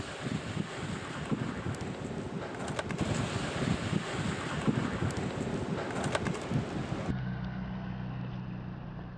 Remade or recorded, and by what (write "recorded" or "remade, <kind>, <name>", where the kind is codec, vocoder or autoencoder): recorded